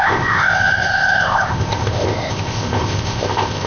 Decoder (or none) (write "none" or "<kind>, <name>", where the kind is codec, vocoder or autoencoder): codec, ZipCodec